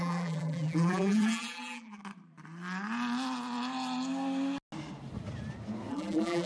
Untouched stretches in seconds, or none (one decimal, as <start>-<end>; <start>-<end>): 2.0-5.9